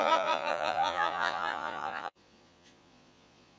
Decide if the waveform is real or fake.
fake